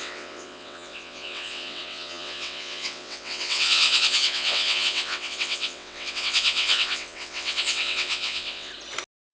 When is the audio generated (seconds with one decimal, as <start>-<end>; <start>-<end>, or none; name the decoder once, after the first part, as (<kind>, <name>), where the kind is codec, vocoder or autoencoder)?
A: 0.0-8.7 (vocoder, WaveNeXt)